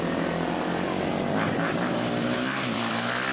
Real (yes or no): yes